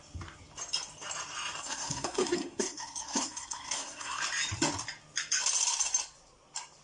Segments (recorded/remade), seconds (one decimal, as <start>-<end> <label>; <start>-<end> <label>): 0.0-1.6 recorded; 1.6-4.2 remade; 4.2-6.8 recorded